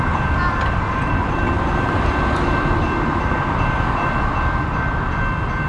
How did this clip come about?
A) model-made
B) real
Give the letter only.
A